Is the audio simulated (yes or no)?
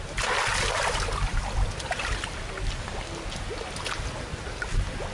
no